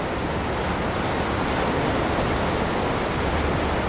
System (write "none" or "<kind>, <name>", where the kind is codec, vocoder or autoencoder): none